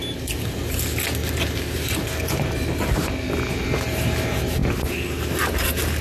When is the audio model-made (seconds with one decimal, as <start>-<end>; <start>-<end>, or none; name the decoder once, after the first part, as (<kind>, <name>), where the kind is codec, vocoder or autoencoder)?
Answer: none